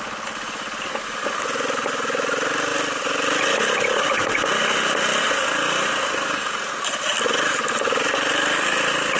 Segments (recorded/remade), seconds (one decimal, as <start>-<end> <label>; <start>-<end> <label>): 0.0-9.2 recorded